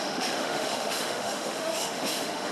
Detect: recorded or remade remade